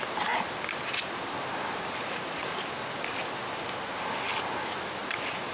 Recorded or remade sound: recorded